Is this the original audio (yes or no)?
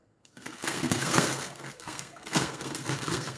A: no